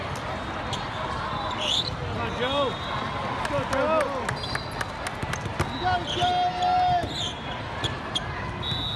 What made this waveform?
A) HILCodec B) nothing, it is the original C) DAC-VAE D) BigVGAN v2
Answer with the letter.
B